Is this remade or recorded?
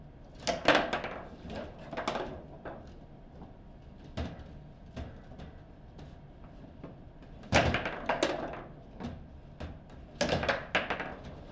recorded